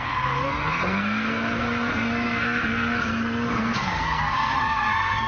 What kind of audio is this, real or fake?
fake